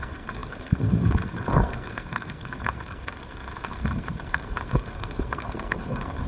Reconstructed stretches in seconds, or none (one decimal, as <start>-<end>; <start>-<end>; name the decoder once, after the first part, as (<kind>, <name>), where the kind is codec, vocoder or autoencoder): 0.0-6.3 (codec, SNAC)